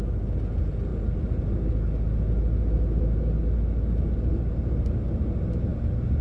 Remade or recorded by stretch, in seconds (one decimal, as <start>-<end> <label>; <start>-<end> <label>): 0.0-6.2 recorded